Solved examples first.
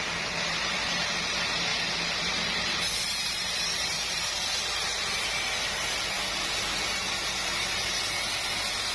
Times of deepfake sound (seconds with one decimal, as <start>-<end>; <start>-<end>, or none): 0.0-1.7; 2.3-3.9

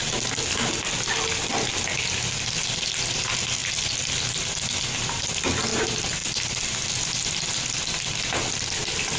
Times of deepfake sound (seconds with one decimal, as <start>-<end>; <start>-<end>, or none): none

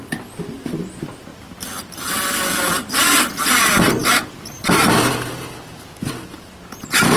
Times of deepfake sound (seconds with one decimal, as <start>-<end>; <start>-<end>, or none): 1.3-3.6; 4.0-5.4

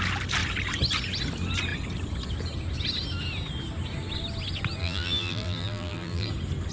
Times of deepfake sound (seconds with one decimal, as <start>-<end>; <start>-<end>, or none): 4.8-6.3

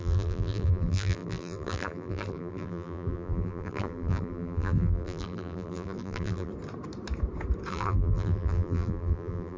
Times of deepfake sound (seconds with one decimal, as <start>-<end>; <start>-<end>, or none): 0.0-6.5; 7.7-9.6

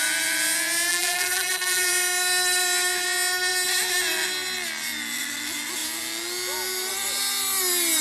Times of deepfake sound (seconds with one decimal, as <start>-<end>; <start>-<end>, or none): 0.9-1.9